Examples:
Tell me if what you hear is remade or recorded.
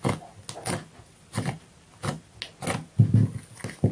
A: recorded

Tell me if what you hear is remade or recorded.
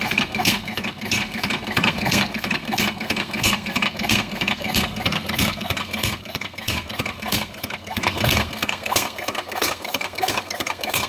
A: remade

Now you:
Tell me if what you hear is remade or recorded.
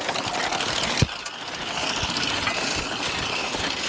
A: recorded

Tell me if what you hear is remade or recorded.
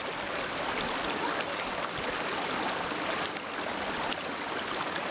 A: recorded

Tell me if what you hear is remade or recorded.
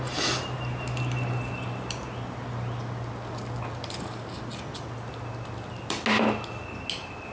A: recorded